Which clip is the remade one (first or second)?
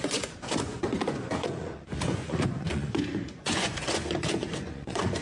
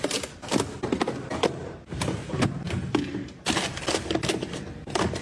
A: first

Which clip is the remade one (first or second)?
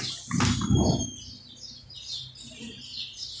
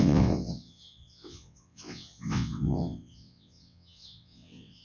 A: second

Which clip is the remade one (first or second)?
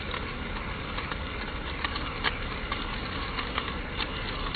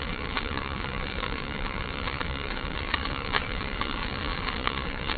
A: second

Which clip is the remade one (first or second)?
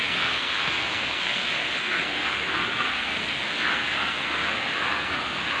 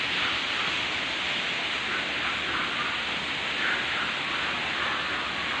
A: first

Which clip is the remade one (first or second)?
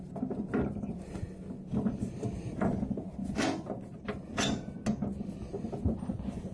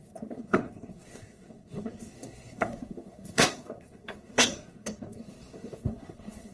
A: second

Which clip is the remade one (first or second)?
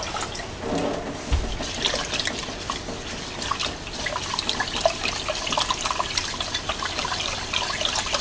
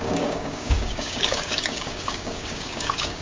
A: second